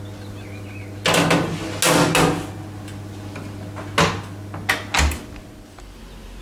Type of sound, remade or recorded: recorded